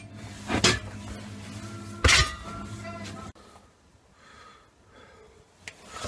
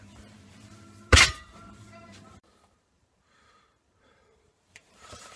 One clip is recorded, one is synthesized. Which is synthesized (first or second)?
second